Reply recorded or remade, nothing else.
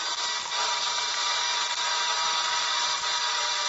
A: recorded